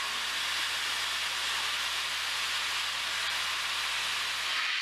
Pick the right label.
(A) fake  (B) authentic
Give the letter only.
B